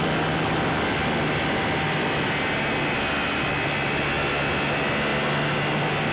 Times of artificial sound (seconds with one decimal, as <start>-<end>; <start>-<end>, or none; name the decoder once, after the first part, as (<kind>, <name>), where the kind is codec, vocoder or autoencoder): none